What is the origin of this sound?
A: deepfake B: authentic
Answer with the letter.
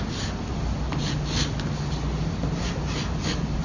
B